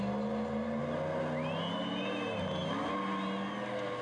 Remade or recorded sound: recorded